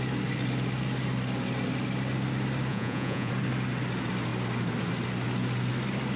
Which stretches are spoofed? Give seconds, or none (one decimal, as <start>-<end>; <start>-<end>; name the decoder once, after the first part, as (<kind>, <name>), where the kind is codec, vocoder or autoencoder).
2.7-3.3 (vocoder, Vocos)